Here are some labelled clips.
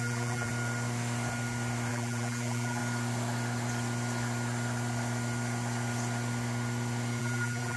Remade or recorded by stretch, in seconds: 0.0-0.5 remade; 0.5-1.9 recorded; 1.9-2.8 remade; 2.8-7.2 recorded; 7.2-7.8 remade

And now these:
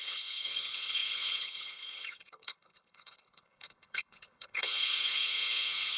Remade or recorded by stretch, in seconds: 0.0-6.0 remade

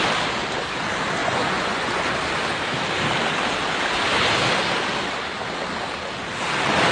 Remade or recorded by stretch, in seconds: 0.0-1.2 recorded; 1.2-2.0 remade; 2.0-6.9 recorded